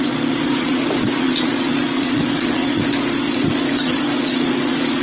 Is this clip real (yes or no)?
no